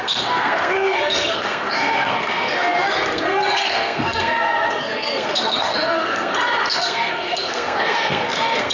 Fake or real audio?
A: fake